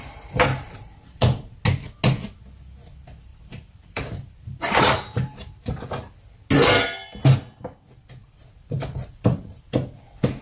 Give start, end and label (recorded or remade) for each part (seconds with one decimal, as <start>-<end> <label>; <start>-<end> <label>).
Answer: 0.0-0.5 recorded; 0.5-1.5 remade; 1.5-3.3 recorded; 3.3-5.9 remade; 5.9-8.2 recorded; 8.2-9.7 remade; 9.7-10.4 recorded